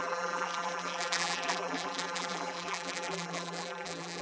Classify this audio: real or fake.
fake